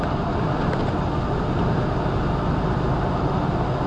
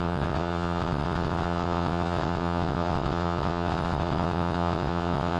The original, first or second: first